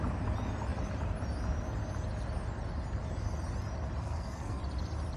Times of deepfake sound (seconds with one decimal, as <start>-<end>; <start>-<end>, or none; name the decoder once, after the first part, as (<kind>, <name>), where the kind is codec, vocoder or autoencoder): 4.0-4.6 (codec, SNAC)

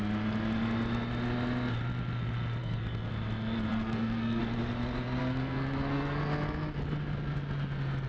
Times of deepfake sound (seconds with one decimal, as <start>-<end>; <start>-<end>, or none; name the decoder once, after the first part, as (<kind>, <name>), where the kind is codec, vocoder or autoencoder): 2.6-3.1 (codec, SNAC); 3.7-4.4; 5.2-6.2

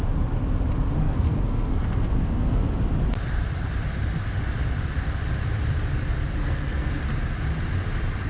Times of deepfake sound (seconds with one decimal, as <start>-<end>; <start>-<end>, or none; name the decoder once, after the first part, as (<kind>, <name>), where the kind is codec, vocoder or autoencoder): 1.0-2.7 (codec, SNAC); 6.4-7.0

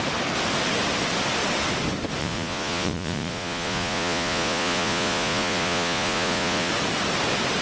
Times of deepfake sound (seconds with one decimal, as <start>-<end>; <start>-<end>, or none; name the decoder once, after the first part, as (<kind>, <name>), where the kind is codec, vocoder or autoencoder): 2.2-6.7 (vocoder, Vocos)

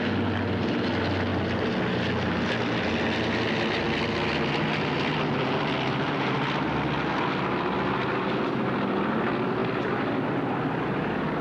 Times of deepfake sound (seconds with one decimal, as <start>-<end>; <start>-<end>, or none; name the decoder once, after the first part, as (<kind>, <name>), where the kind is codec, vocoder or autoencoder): none

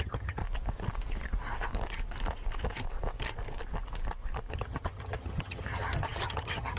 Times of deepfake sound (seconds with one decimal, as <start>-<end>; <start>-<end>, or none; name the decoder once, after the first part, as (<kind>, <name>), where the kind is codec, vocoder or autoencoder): 0.0-0.4 (vocoder, HiFi-GAN); 4.5-6.8